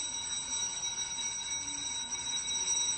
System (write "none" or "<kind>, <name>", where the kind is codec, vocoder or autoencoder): none